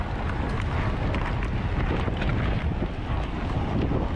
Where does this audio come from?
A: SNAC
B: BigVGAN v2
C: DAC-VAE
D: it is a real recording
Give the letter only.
D